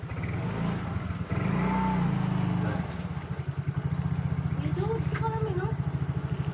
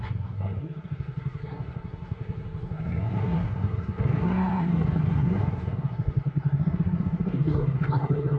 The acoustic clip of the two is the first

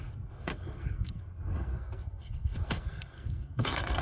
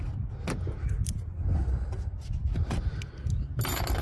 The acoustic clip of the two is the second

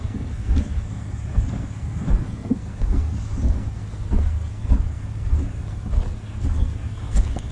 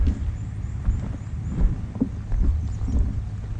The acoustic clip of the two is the second